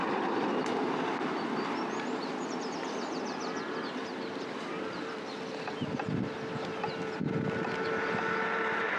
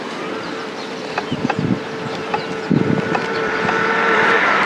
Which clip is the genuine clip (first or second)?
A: first